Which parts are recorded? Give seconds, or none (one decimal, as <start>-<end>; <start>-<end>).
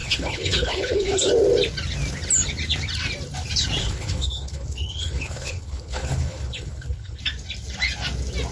1.3-3.8; 7.2-8.5